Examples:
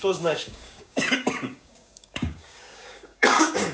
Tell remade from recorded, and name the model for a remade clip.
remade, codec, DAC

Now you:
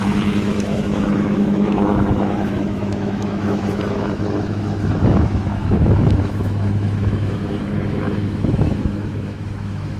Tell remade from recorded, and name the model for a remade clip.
remade, autoencoder, DAC-VAE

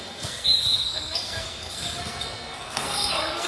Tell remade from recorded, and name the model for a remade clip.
remade, codec, SNAC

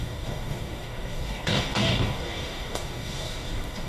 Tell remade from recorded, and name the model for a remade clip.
remade, codec, DAC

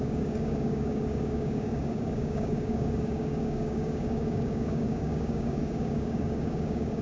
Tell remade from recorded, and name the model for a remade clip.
remade, codec, DAC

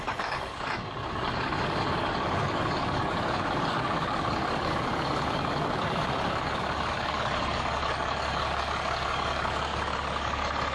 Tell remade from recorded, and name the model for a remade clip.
remade, codec, DAC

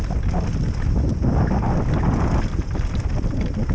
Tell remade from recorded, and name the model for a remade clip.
recorded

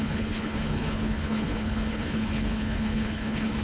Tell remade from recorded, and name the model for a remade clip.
remade, codec, HILCodec